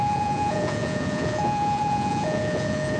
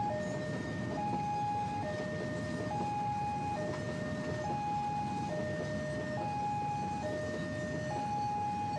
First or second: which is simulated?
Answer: first